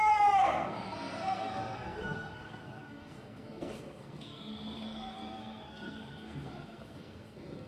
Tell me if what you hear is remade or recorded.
remade